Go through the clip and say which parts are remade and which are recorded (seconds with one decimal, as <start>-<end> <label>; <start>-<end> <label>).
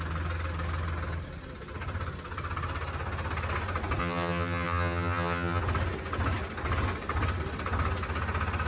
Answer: 0.0-4.0 recorded; 4.0-5.6 remade; 5.6-8.7 recorded